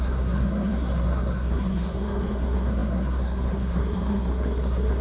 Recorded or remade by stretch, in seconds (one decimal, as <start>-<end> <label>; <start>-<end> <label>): 0.0-5.0 remade